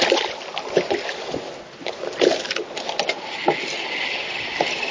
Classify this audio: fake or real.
real